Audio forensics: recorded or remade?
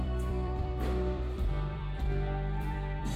remade